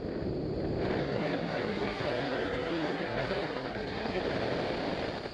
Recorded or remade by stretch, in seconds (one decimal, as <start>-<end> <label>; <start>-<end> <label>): 0.0-1.0 recorded; 1.0-4.2 remade; 4.2-5.3 recorded